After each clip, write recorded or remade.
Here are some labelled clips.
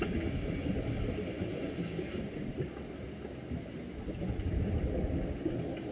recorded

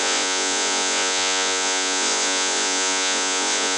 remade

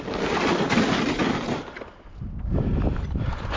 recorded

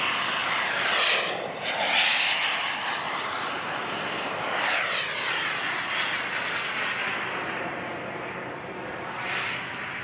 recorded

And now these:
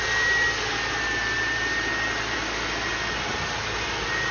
recorded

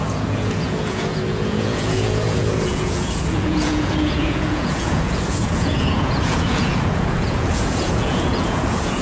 remade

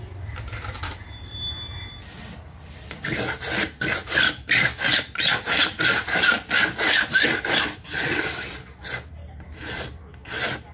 recorded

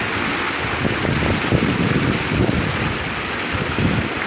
recorded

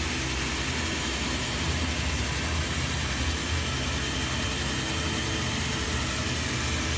recorded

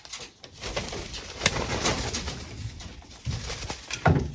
recorded